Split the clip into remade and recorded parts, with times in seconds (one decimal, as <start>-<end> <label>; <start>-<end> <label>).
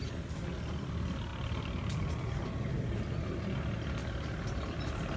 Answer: 0.0-5.2 recorded